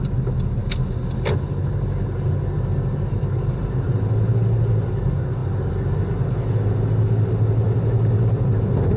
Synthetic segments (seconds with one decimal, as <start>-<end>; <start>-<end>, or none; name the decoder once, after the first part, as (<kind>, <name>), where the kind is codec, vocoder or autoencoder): none